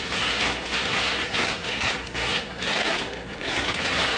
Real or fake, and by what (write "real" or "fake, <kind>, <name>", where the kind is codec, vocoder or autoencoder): fake, codec, SNAC